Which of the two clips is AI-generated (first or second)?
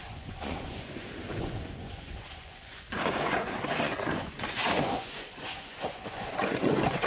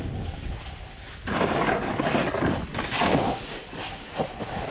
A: first